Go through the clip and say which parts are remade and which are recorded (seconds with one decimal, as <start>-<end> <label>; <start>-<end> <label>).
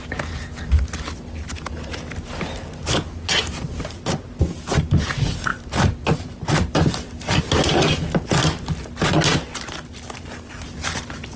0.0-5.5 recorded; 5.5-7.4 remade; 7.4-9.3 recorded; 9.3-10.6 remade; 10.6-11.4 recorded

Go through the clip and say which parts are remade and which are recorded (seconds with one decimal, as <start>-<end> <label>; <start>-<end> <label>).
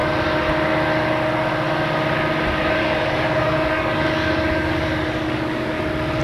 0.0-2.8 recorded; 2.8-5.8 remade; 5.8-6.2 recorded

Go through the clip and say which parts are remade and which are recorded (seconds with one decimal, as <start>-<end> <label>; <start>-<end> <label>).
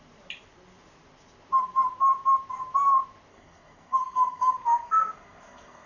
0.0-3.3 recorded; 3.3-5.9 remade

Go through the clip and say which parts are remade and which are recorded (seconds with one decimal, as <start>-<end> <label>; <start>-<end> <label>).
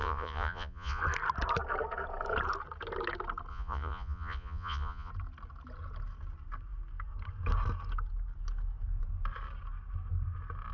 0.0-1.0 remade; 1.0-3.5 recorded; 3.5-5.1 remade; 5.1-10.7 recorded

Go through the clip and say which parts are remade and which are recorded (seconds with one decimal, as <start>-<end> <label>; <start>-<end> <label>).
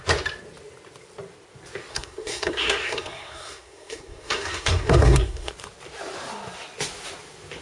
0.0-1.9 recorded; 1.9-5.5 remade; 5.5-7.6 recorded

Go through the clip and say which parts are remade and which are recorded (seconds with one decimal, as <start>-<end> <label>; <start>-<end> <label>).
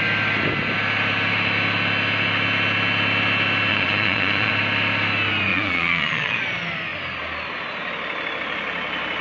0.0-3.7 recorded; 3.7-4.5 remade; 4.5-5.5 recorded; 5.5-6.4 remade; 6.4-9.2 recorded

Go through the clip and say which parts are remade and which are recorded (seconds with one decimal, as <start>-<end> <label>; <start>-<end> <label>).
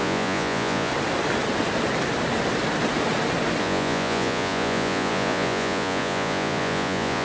0.0-0.9 remade; 0.9-3.6 recorded; 3.6-7.2 remade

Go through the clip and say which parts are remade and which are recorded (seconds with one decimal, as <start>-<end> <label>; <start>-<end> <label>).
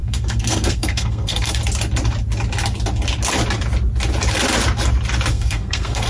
0.0-1.6 remade; 1.6-5.3 recorded; 5.3-6.1 remade